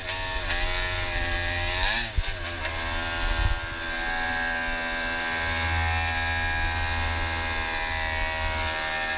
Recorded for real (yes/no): yes